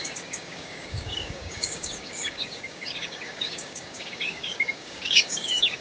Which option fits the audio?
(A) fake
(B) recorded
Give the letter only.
A